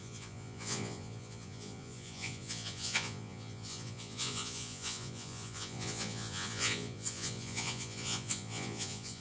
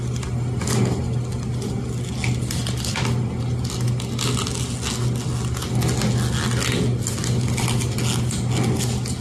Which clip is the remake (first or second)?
first